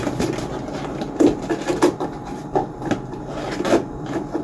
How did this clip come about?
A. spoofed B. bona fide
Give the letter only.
B